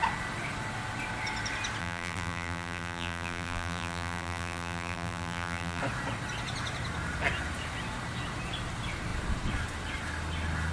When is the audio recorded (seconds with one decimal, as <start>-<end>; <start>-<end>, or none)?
0.0-1.8; 5.8-10.7